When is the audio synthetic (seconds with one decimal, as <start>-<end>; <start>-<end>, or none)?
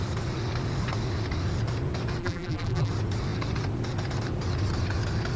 2.2-2.9